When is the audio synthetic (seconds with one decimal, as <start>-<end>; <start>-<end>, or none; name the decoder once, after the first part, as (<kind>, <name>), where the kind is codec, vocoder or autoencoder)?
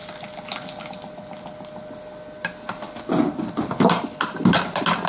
none